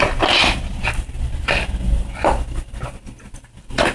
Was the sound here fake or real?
fake